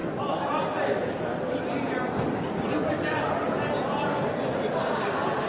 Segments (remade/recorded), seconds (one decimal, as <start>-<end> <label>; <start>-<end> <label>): 0.0-3.3 remade; 3.3-5.5 recorded